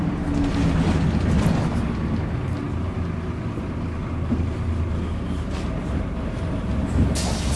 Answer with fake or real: real